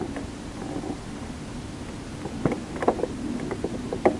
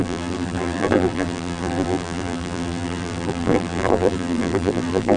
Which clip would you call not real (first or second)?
second